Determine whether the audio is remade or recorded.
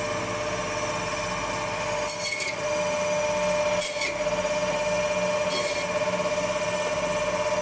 recorded